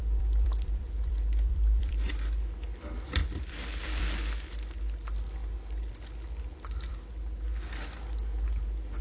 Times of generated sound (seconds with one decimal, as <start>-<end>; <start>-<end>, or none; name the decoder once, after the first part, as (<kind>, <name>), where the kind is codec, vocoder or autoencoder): 0.0-2.1 (vocoder, BigVGAN v2); 3.2-4.0; 5.4-5.9